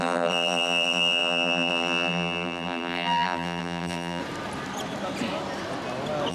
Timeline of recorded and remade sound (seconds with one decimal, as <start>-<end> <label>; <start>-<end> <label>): 0.0-4.2 remade; 4.2-6.3 recorded